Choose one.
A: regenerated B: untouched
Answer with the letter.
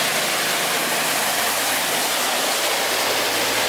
B